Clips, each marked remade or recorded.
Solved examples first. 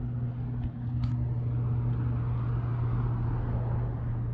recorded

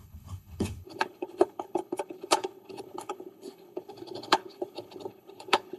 remade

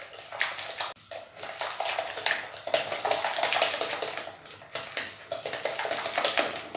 recorded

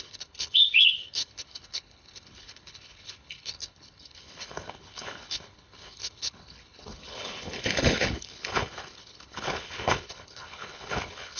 remade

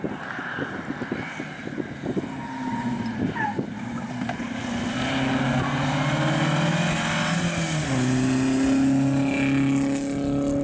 recorded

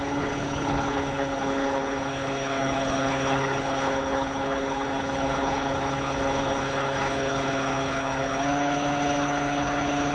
remade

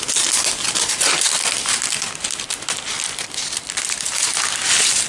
recorded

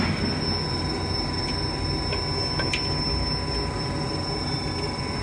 recorded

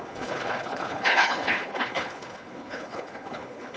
remade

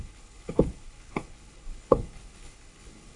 remade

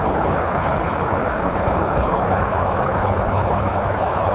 remade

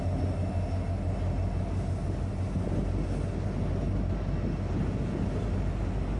recorded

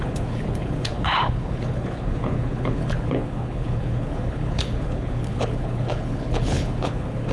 remade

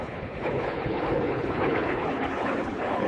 remade